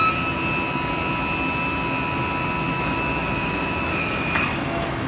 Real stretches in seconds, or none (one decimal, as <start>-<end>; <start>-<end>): 0.0-2.7